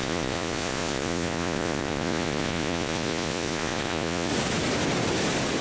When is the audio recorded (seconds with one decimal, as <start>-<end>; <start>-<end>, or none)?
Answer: 4.3-5.6